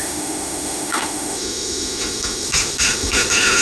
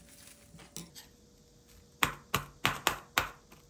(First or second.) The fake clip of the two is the first